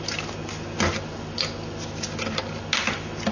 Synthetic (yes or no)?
no